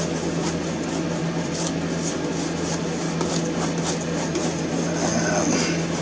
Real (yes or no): yes